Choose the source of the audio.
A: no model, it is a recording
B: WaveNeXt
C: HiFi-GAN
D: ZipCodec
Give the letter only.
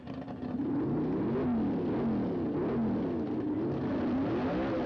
A